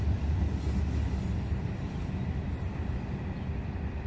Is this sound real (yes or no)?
yes